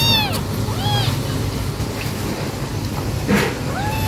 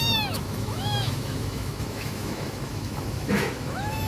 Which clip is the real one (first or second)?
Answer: first